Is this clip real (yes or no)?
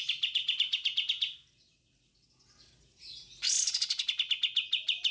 yes